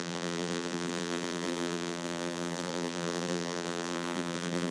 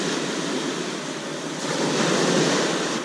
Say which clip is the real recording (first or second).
second